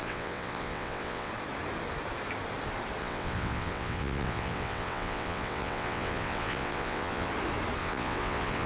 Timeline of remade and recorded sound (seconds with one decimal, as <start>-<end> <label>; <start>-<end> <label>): 0.0-1.3 remade; 1.3-3.0 recorded; 3.0-7.3 remade; 7.3-7.8 recorded; 7.8-8.7 remade